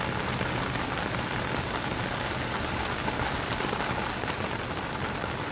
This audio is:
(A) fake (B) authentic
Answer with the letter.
B